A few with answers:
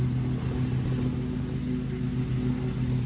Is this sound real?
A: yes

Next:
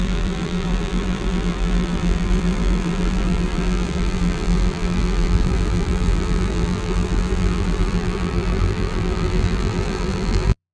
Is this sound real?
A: no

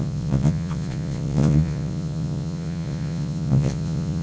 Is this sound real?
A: no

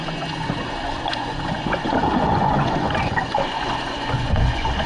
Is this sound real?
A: no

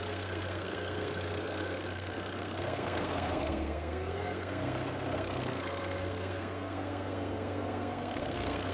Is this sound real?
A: no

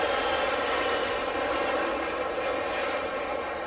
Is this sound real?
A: yes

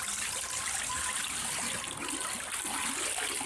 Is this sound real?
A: yes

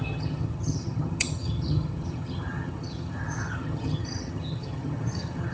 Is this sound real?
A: no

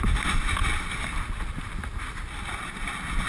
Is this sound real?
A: yes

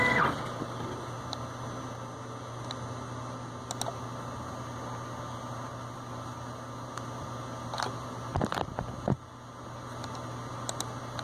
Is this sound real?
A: yes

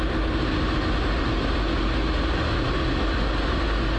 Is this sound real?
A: yes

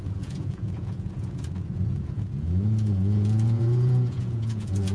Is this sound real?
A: no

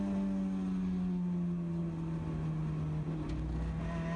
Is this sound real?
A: yes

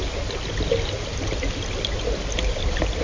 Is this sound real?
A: yes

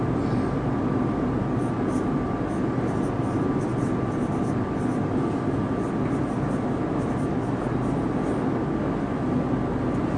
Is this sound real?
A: yes